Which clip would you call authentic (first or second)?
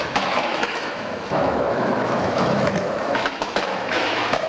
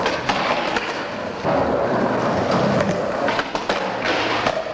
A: second